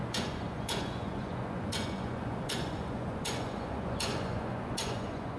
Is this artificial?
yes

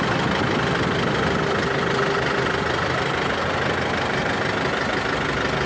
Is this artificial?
no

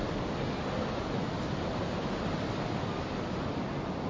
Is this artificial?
no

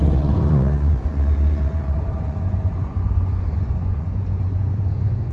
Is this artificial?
yes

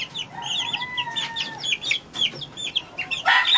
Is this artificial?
no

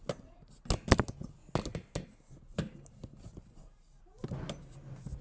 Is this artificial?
no